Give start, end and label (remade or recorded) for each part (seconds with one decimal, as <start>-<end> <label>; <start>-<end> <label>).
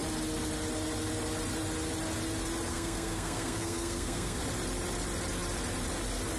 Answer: 0.0-2.7 recorded; 2.7-4.4 remade; 4.4-6.4 recorded